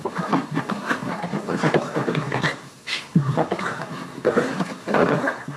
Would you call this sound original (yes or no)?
no